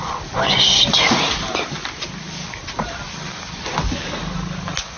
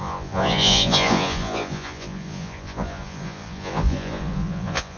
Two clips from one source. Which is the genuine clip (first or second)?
first